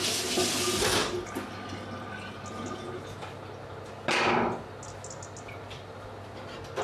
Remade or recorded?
recorded